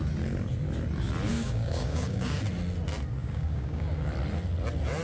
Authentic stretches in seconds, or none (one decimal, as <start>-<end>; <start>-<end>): 0.0-1.3; 2.4-3.2; 4.1-5.0